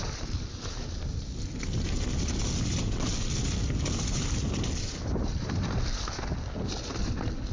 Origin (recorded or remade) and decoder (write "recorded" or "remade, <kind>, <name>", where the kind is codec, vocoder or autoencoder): recorded